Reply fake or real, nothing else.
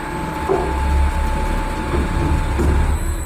real